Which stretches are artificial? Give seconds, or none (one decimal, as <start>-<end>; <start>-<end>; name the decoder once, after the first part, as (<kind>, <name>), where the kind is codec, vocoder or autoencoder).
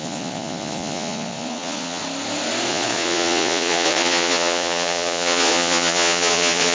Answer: 0.0-2.0 (vocoder, Vocos); 2.7-6.7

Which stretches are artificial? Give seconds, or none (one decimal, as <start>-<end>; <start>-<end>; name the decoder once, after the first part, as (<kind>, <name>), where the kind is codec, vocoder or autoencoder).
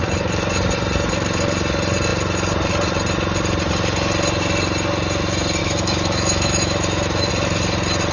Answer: 5.6-7.3 (autoencoder, DAC-VAE)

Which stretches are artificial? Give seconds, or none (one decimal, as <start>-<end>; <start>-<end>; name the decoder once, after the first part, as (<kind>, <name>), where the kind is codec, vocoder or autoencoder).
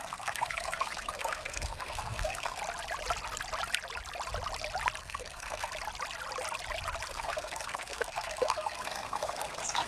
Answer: 0.0-2.6 (codec, SNAC); 5.0-5.7; 7.1-9.9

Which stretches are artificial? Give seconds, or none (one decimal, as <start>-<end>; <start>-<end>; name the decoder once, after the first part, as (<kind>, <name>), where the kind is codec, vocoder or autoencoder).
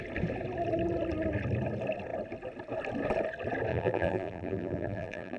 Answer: 3.7-5.4 (vocoder, BigVGAN v2)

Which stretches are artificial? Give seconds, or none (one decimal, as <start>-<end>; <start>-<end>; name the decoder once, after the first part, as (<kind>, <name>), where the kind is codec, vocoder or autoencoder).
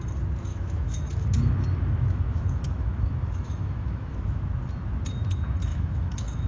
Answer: 0.5-4.4 (autoencoder, DAC-VAE); 5.7-6.5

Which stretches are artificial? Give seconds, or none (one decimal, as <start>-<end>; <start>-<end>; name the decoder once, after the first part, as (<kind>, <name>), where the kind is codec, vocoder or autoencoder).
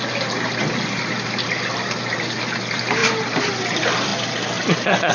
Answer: 3.0-3.5 (vocoder, BigVGAN v2)